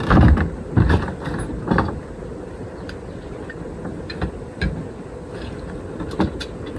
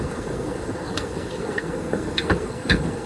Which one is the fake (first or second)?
second